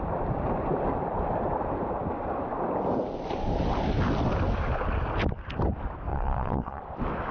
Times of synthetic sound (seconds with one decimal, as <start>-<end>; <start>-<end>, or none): 6.1-6.8